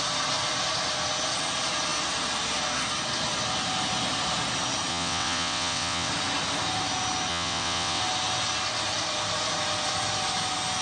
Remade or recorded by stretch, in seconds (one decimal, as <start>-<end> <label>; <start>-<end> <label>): 0.0-4.9 recorded; 4.9-6.1 remade; 6.1-7.3 recorded; 7.3-8.0 remade; 8.0-10.8 recorded